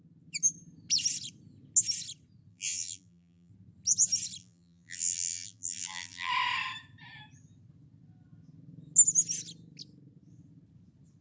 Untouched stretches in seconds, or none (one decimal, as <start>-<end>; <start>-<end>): 0.0-2.5; 3.5-4.4; 6.3-11.2